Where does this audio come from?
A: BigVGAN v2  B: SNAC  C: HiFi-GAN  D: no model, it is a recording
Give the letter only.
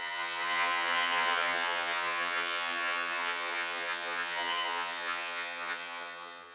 C